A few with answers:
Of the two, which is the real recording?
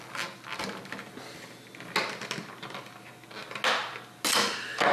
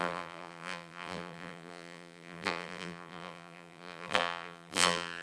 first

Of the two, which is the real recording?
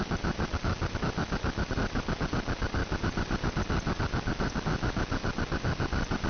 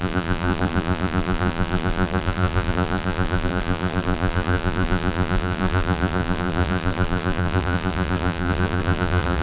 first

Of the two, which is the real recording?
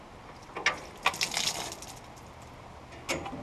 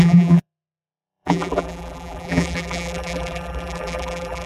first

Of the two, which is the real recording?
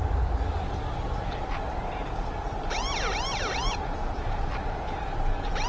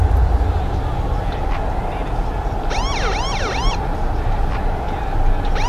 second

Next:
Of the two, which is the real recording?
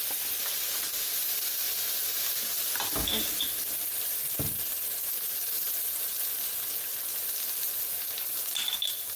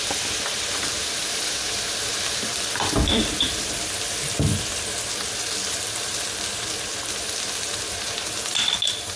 first